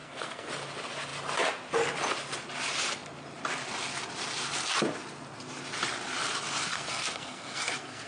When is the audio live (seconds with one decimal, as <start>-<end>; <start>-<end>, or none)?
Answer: 0.5-6.7